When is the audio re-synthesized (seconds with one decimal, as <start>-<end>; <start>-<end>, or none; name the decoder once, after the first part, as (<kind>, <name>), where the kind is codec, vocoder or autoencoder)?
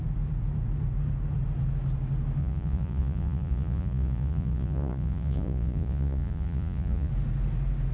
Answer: 2.4-7.1 (vocoder, Vocos)